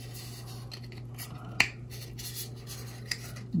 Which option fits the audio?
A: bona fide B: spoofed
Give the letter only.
A